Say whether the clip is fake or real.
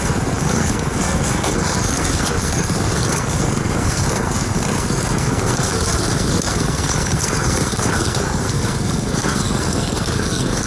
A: fake